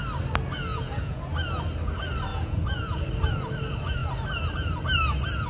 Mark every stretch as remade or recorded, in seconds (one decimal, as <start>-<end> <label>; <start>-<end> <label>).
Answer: 0.0-0.7 recorded; 0.7-1.2 remade; 1.2-2.3 recorded; 2.3-3.0 remade; 3.0-5.5 recorded